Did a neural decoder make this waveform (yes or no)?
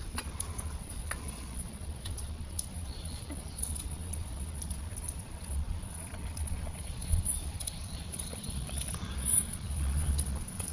yes